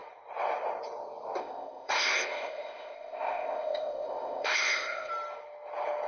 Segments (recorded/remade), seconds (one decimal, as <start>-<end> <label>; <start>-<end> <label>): 0.0-1.4 recorded; 1.4-5.1 remade; 5.1-6.1 recorded